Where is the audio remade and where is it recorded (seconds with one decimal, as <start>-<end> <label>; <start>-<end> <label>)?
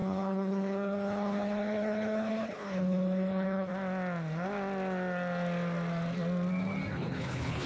0.0-3.7 remade; 3.7-6.9 recorded; 6.9-7.7 remade